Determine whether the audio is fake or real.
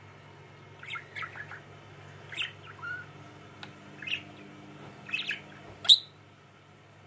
real